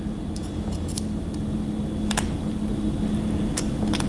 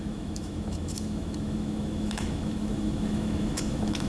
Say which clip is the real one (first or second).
first